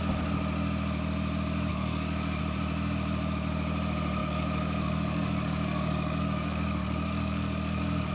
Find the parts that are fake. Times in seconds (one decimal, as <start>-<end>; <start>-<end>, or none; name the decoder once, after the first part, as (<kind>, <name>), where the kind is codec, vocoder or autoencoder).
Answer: 1.7-2.4 (codec, DAC); 4.2-8.1